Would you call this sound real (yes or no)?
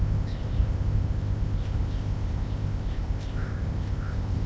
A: no